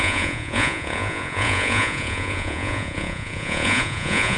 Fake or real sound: fake